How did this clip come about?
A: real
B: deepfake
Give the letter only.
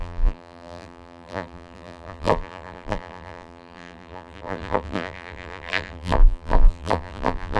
B